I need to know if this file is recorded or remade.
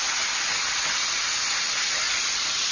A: recorded